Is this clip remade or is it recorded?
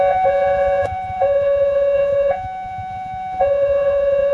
remade